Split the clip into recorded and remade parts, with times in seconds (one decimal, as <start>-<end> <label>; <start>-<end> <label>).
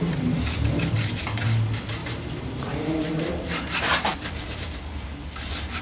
0.0-2.0 recorded; 2.0-3.6 remade; 3.6-4.1 recorded; 4.1-4.9 remade; 4.9-5.8 recorded